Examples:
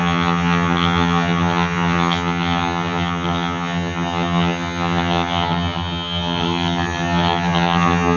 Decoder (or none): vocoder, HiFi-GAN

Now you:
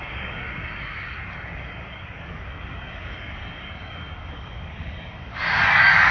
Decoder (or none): codec, DAC